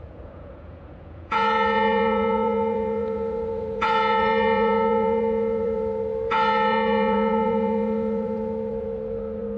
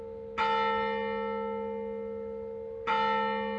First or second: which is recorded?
second